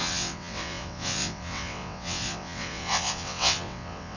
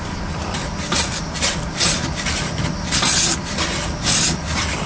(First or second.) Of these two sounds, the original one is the second